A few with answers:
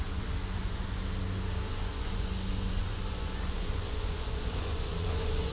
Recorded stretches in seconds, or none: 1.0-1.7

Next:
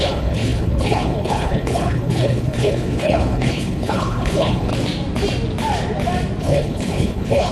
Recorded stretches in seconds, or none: 4.7-6.4

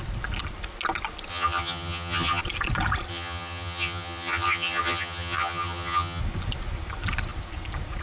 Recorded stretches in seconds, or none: 0.0-1.3; 2.4-3.1; 6.2-8.0

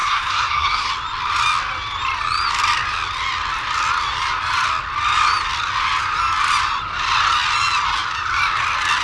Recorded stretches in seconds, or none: 0.9-9.0

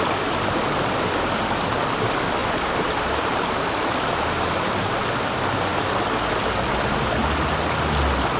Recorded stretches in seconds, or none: 0.0-2.4; 5.3-8.4

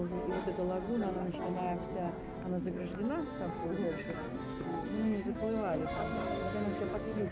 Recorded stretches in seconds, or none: 0.0-4.7

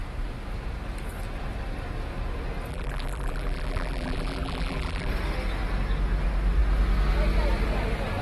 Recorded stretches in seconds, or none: 0.0-2.7; 5.1-8.2

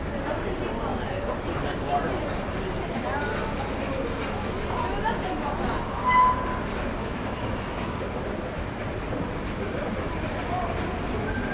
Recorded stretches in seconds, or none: 0.0-7.0; 8.1-11.5